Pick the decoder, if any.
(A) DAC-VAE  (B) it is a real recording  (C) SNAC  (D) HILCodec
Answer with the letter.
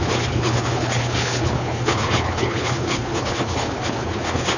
D